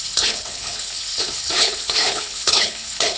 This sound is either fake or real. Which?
fake